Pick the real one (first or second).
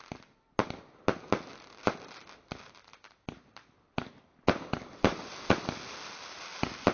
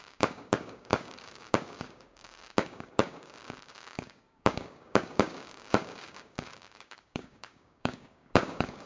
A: first